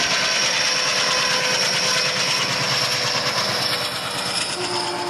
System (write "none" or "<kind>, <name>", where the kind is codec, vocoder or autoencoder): none